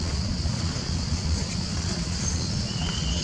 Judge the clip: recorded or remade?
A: remade